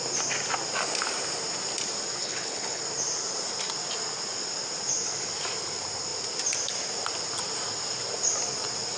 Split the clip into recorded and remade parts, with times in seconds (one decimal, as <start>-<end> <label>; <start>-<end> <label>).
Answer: 0.0-2.2 recorded; 2.2-2.8 remade; 2.8-9.0 recorded